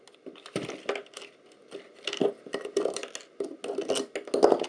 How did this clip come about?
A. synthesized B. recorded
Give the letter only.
B